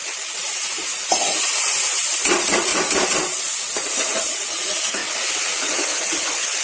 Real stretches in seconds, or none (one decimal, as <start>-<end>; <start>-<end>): 2.7-4.1; 5.0-5.6